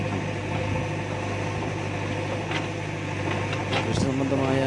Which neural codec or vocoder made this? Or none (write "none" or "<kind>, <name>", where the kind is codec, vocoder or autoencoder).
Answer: none